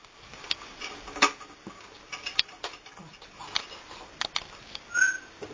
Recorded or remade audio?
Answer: recorded